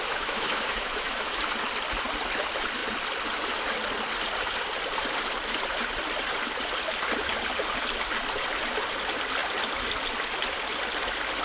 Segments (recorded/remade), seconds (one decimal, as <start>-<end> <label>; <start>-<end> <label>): 0.0-1.4 remade; 1.4-11.4 recorded